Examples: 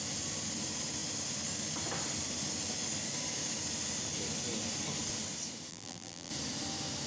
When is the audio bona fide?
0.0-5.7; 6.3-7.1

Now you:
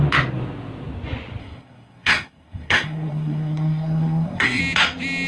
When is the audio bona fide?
0.0-1.4; 4.6-5.3

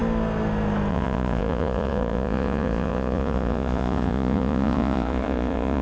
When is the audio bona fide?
0.0-0.9

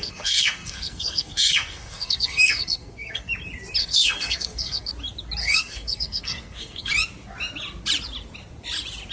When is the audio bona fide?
3.3-3.8; 4.9-5.4; 6.9-9.1